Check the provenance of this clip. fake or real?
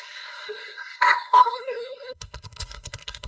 fake